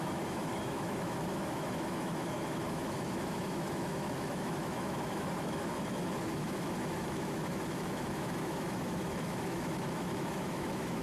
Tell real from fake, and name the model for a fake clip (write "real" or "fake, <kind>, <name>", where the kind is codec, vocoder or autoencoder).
fake, autoencoder, DAC-VAE